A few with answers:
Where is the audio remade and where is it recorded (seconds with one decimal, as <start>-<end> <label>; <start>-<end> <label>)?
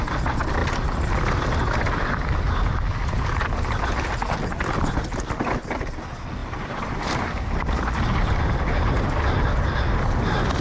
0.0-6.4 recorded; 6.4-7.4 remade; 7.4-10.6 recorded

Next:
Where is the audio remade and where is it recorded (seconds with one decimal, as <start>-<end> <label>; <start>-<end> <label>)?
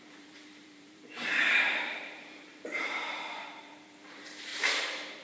0.0-4.5 remade; 4.5-5.2 recorded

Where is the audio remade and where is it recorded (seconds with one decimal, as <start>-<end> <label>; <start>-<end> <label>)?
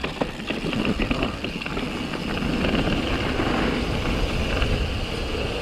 0.0-5.6 recorded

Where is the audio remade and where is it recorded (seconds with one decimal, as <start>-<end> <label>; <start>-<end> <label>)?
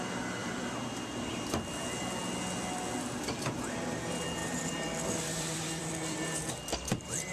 0.0-0.4 recorded; 0.4-1.5 remade; 1.5-4.4 recorded; 4.4-6.5 remade; 6.5-7.3 recorded